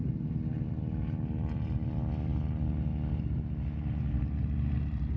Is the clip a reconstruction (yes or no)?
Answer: no